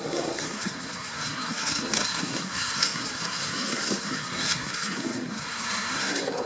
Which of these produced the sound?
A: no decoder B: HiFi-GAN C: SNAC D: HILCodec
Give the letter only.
C